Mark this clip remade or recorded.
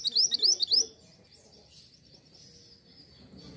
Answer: recorded